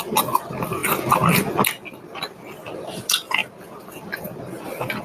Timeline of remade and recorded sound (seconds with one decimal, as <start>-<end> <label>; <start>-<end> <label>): 0.0-5.0 recorded